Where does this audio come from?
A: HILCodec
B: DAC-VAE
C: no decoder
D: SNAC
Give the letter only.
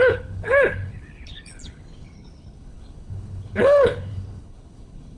A